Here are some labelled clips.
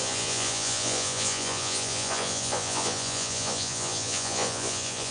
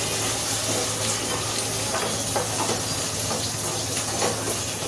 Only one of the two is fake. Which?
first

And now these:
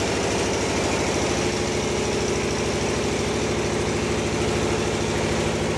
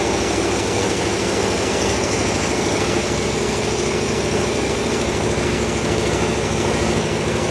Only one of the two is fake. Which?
second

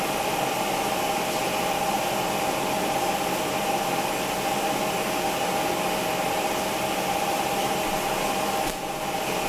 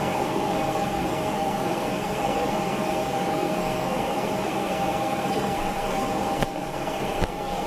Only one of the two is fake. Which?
second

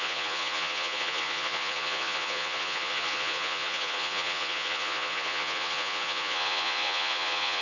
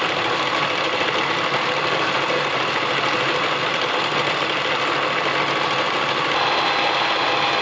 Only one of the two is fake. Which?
first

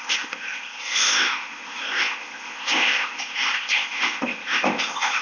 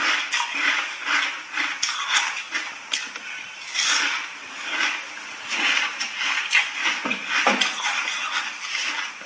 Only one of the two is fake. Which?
first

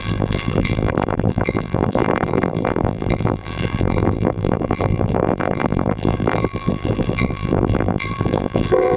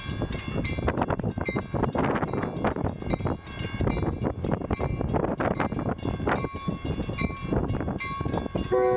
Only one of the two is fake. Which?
first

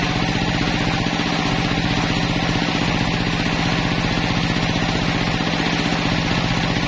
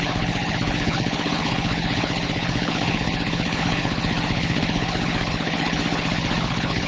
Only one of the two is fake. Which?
second